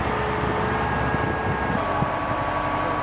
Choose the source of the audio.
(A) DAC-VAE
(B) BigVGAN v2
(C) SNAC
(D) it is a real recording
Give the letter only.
D